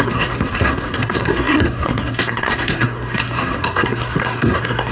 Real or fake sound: fake